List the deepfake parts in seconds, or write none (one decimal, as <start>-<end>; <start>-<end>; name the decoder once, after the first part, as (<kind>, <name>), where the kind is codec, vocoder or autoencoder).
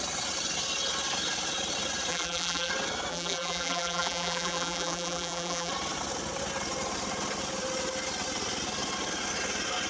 2.1-2.7 (vocoder, BigVGAN v2); 3.1-5.7